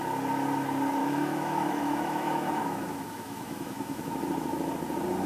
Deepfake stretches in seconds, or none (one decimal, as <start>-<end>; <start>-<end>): 1.0-4.2